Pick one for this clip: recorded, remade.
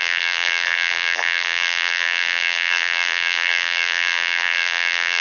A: remade